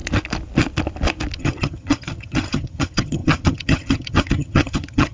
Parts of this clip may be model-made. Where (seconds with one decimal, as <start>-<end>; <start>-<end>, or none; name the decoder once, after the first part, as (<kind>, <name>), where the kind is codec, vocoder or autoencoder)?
1.4-5.1 (vocoder, HiFi-GAN)